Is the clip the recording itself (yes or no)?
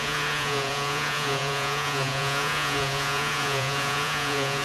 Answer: no